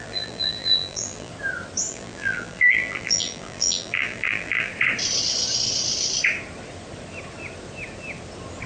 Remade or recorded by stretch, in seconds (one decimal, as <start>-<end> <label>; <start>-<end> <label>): 0.0-1.3 remade; 1.3-1.9 recorded; 1.9-4.7 remade; 4.7-8.7 recorded